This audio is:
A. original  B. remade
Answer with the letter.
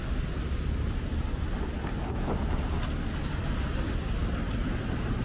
A